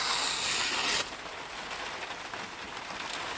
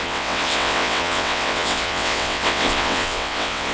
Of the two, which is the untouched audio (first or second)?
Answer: first